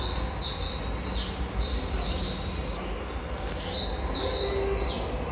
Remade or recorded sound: recorded